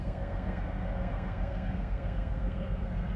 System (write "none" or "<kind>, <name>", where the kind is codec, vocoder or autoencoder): codec, SNAC